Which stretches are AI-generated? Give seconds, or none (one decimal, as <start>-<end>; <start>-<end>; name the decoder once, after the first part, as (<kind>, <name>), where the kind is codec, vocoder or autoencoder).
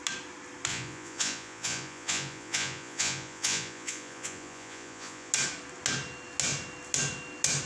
0.7-5.3 (vocoder, Vocos)